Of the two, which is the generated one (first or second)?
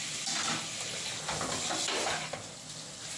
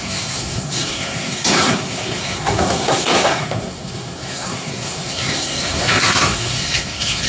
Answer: second